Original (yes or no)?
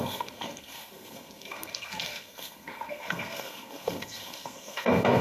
no